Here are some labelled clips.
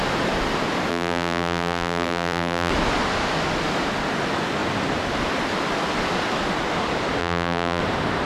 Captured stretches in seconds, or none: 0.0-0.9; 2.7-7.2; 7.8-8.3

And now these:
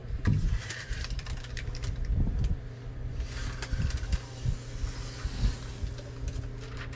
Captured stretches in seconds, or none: 3.2-7.0

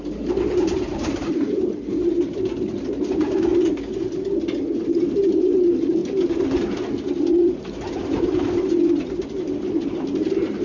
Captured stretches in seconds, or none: 3.5-4.9; 6.0-9.1

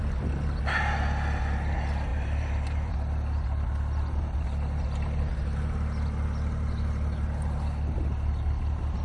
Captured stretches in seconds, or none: 0.0-2.1; 2.9-9.0

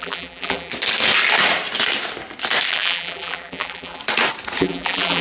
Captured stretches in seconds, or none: 0.7-2.7; 4.0-4.6

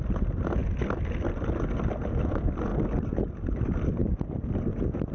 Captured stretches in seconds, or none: 0.6-2.2; 2.7-3.2; 4.0-4.6